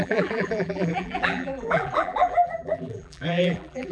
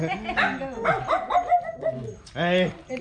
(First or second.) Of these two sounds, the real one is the second